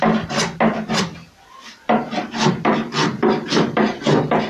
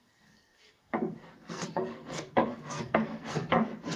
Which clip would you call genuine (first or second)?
first